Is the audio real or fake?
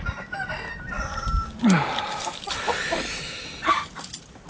real